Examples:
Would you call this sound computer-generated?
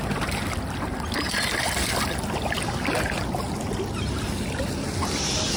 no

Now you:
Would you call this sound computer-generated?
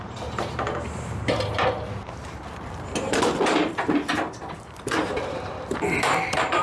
yes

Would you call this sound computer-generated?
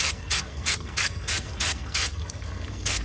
yes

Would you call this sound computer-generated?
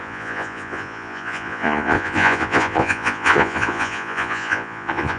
yes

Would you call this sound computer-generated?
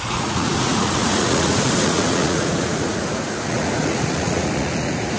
yes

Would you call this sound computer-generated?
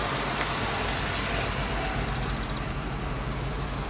no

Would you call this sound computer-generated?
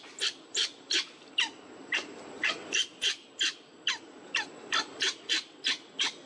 no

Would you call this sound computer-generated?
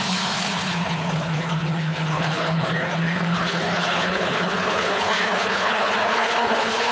yes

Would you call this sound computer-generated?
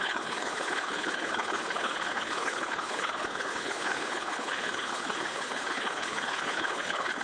yes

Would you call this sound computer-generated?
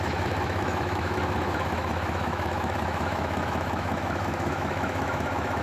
yes